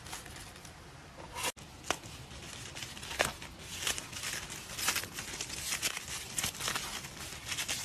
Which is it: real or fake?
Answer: real